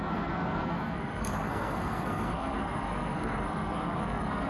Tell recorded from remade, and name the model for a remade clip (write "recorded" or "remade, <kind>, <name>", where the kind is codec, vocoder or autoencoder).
remade, codec, SNAC